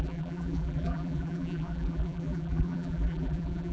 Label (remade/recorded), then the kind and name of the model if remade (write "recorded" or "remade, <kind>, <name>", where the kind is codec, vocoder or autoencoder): remade, vocoder, BigVGAN v2